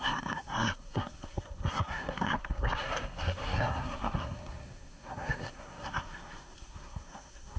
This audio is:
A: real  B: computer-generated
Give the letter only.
B